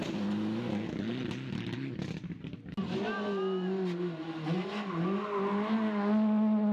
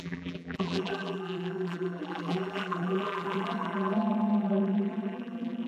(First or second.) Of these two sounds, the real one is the first